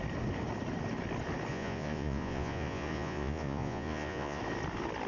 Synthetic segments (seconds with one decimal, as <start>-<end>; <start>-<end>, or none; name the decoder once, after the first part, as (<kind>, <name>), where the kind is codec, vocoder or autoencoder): 1.5-4.4 (vocoder, Vocos)